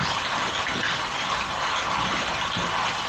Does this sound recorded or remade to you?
recorded